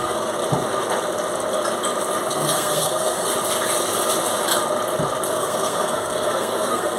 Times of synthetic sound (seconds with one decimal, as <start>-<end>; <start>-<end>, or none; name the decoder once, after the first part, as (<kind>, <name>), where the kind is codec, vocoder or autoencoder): 0.0-0.4 (codec, SNAC); 2.3-3.3; 5.3-7.0